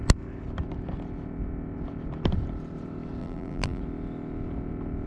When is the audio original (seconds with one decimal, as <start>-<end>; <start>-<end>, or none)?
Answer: 0.0-3.2; 3.8-5.1